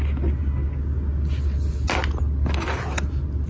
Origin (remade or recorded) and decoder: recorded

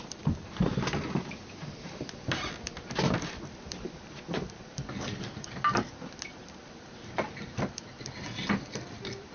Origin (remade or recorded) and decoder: recorded